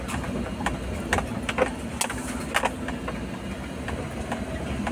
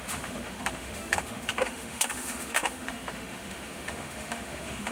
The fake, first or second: second